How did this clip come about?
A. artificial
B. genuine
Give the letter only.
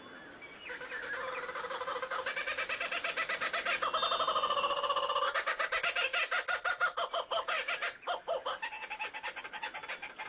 B